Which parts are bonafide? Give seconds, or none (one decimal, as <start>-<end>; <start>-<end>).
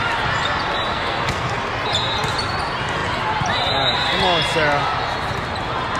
0.0-0.9; 1.6-6.0